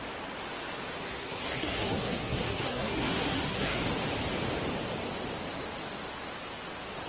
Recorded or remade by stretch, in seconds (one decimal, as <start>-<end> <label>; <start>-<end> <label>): 0.0-1.0 recorded; 1.0-3.8 remade; 3.8-7.1 recorded

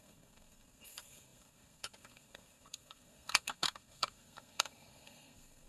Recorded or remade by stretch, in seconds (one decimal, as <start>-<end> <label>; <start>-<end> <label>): 0.0-5.7 remade

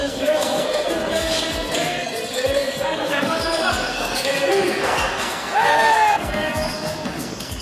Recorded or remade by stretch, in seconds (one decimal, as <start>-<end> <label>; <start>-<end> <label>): 0.0-7.6 remade

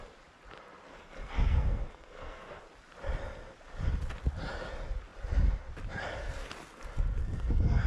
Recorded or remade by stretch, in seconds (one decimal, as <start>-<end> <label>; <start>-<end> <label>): 0.0-0.9 recorded; 0.9-2.6 remade; 2.6-7.2 recorded; 7.2-7.9 remade

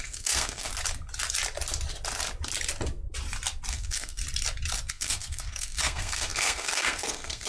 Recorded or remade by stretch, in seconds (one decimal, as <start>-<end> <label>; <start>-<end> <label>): 0.0-0.7 remade; 0.7-3.7 recorded; 3.7-4.2 remade; 4.2-4.9 recorded; 4.9-7.5 remade

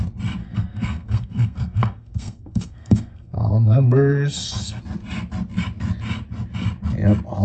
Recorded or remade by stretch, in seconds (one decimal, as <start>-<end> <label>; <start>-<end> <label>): 0.0-0.4 recorded; 0.4-4.8 remade; 4.8-7.4 recorded

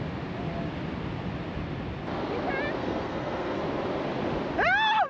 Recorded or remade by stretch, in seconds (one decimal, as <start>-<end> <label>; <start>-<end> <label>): 0.0-2.8 recorded; 2.8-3.6 remade; 3.6-5.1 recorded

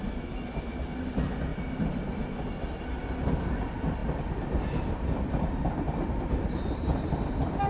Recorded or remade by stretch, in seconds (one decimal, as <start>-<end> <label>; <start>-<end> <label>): 0.0-7.7 recorded